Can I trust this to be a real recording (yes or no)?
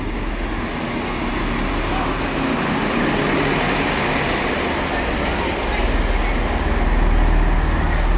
yes